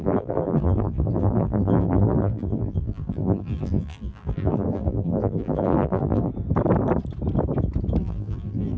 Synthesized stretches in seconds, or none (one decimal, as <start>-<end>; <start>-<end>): 0.0-6.3; 8.0-8.8

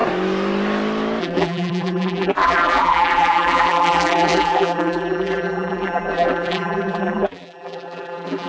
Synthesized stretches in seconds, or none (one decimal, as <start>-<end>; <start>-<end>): 1.2-8.5